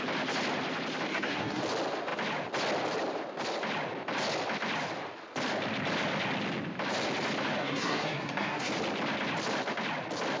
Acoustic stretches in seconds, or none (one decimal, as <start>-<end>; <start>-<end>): 0.0-1.1; 1.6-7.6; 8.7-10.4